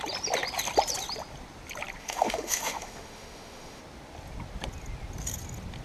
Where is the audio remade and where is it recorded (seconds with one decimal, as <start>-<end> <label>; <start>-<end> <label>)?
0.0-2.0 recorded; 2.0-3.8 remade; 3.8-5.8 recorded